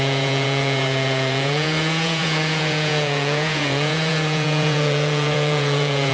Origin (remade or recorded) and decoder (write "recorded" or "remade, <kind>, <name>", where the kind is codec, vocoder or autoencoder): remade, vocoder, Vocos